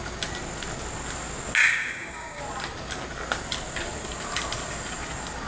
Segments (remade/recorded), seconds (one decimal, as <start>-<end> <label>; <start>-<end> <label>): 0.0-1.6 recorded; 1.6-2.4 remade; 2.4-5.5 recorded